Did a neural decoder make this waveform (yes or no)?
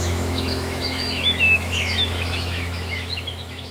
yes